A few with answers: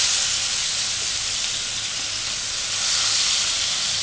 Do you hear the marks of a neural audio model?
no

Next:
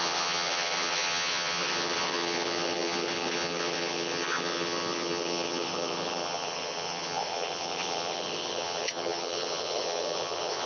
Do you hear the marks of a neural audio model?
yes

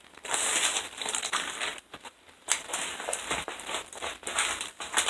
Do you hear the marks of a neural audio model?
no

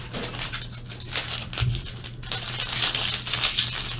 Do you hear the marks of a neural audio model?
no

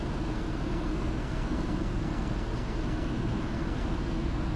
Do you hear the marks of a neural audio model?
yes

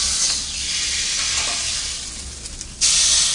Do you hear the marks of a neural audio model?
no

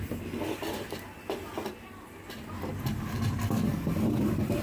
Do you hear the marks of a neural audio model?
no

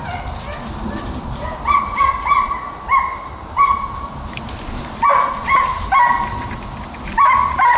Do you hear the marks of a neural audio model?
no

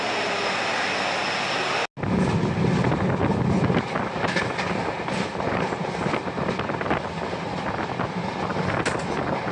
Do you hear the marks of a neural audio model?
no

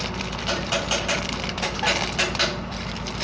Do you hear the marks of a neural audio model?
yes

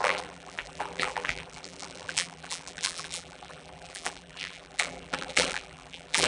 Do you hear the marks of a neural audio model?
yes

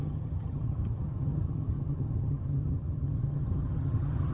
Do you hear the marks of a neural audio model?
yes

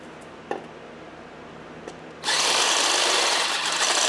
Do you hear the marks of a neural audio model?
no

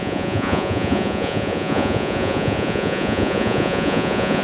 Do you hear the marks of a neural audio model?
yes